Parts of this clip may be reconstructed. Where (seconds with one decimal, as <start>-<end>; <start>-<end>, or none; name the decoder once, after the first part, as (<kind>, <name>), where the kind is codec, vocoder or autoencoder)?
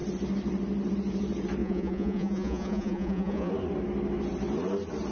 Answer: 1.6-3.5 (vocoder, Vocos)